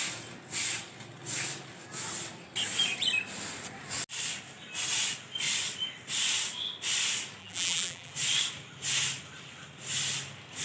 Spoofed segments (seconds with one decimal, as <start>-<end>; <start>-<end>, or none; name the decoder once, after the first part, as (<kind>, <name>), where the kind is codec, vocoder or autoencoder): 7.4-8.1 (vocoder, BigVGAN v2)